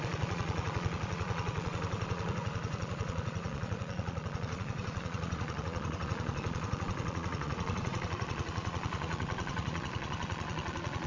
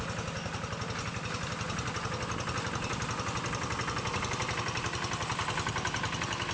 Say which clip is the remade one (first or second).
first